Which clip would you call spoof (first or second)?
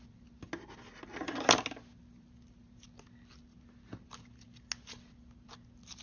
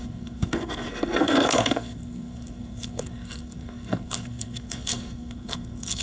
second